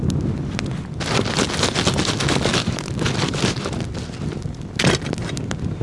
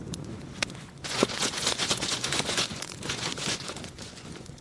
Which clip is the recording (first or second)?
first